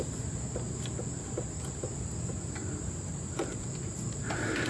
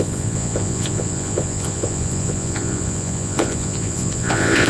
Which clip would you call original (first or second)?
first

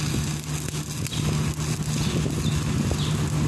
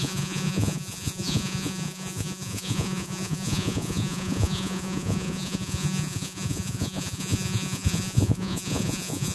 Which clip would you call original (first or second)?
first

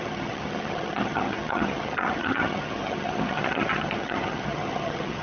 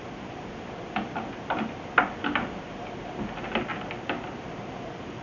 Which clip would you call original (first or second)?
second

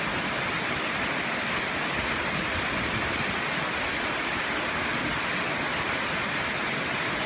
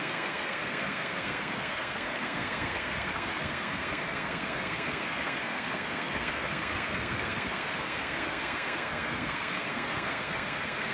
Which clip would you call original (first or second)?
first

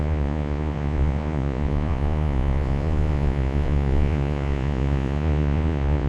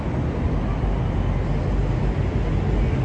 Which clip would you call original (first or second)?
second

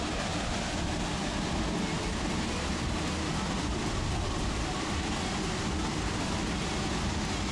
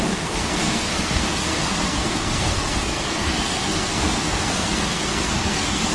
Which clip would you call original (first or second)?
first